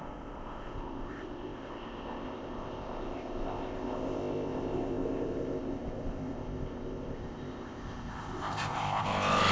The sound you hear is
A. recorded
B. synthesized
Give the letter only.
B